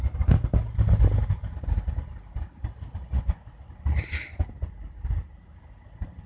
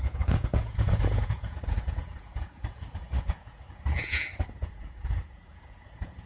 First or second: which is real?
first